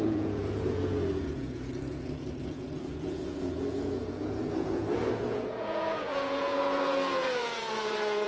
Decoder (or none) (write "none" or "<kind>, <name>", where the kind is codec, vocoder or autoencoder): vocoder, Vocos